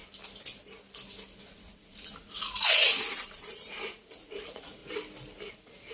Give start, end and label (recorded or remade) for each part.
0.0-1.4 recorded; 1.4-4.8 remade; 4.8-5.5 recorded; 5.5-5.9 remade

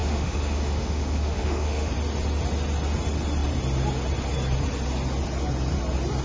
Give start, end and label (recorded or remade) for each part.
0.0-1.9 remade; 1.9-6.2 recorded

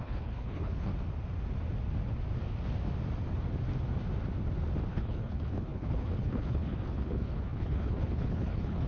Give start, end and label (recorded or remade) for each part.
0.0-0.9 remade; 0.9-4.9 recorded; 4.9-8.9 remade

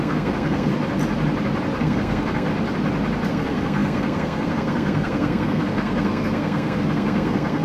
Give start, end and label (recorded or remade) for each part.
0.0-0.7 remade; 0.7-1.8 recorded; 1.8-2.5 remade; 2.5-3.3 recorded; 3.3-7.6 remade

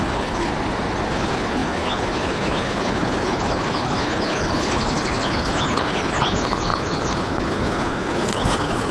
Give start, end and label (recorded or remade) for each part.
0.0-0.5 remade; 0.5-1.1 recorded; 1.1-8.9 remade